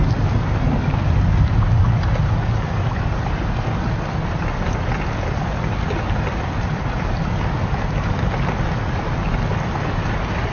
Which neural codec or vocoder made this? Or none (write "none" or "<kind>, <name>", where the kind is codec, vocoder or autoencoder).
none